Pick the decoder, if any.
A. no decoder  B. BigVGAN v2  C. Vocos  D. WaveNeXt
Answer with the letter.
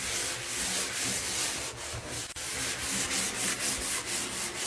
A